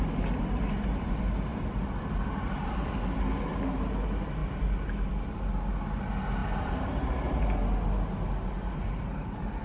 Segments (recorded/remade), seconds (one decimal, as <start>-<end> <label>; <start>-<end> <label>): 0.0-1.5 recorded; 1.5-2.9 remade; 2.9-6.4 recorded; 6.4-7.4 remade; 7.4-9.6 recorded